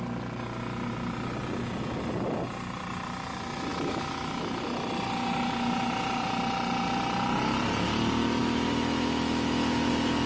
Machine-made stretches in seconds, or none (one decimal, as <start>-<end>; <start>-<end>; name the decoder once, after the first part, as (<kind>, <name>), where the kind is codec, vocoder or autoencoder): 3.7-4.6 (autoencoder, DAC-VAE); 8.4-9.9